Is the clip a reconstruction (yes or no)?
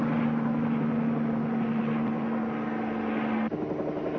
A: no